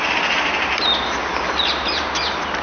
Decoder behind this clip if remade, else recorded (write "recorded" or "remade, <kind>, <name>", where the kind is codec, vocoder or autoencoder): remade, vocoder, BigVGAN v2